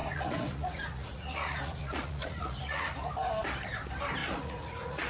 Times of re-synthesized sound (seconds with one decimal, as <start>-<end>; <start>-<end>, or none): 0.0-3.1; 4.2-5.1

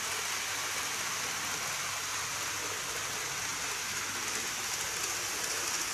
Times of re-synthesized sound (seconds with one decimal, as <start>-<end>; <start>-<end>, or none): none

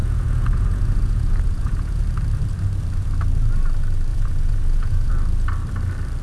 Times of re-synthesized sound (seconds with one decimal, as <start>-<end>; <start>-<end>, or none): 0.0-2.0; 4.1-5.1

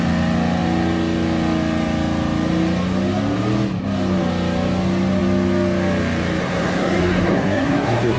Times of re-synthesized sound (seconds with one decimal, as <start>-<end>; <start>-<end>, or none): 6.4-8.2

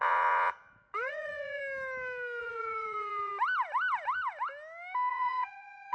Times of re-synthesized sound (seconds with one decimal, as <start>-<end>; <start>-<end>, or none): 0.0-1.6; 2.4-3.3; 5.1-5.9

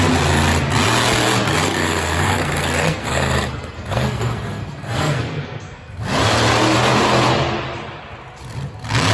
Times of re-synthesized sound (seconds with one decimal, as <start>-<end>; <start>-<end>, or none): 1.6-6.0

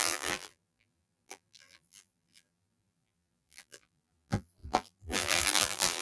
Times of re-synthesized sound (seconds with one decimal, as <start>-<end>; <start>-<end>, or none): 0.0-6.0

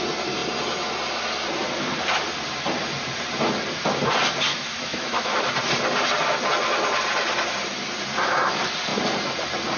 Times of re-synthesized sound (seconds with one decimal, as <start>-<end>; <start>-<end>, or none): 4.5-5.4